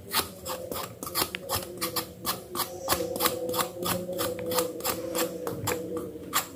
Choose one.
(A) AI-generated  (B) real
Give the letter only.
B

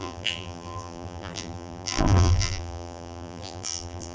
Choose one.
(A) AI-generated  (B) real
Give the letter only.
A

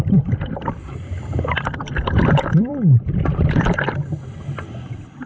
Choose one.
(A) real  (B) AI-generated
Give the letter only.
B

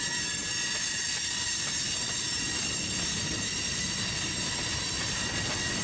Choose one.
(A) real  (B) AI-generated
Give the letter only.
B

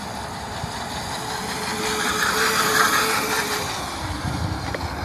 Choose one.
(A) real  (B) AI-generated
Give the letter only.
A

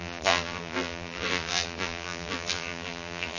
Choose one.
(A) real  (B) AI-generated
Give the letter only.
B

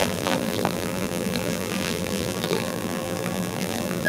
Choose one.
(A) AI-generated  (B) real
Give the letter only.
A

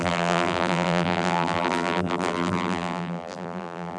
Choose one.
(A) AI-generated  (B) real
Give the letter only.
A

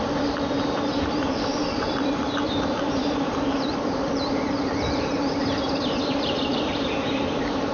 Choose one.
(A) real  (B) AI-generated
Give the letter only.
B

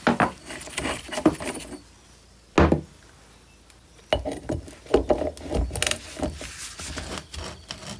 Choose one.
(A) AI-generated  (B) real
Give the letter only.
B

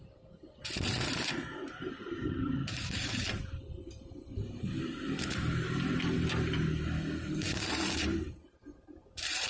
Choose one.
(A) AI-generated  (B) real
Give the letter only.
A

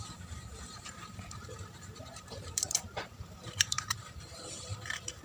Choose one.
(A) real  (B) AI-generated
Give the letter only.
B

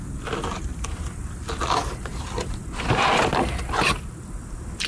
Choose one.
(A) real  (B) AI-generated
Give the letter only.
B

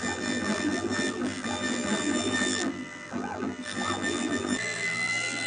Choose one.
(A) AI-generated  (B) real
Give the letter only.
A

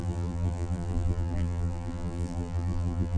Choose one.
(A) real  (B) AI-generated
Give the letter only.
B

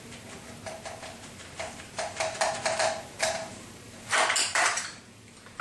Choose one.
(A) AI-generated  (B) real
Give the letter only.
A